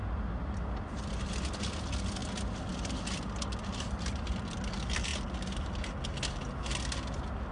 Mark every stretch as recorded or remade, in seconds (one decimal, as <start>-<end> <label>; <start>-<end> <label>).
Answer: 0.0-7.5 recorded